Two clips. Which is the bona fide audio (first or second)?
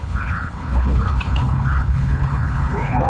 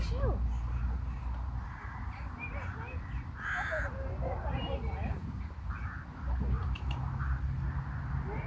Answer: second